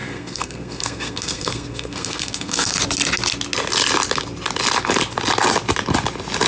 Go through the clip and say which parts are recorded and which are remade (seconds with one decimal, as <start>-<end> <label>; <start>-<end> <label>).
0.0-2.7 remade; 2.7-6.5 recorded